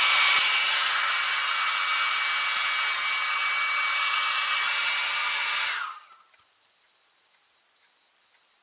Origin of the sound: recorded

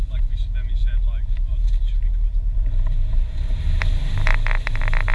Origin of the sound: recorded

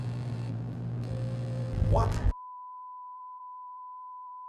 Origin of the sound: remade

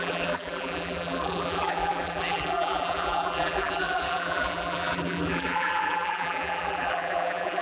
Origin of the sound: remade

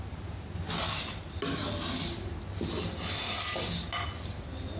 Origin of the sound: recorded